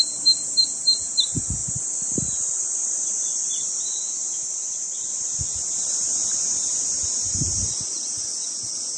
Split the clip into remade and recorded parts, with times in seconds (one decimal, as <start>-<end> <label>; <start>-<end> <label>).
0.0-9.0 recorded